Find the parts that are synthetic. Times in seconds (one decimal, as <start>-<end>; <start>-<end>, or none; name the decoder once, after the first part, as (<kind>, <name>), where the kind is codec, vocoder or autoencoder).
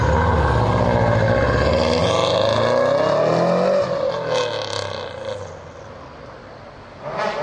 none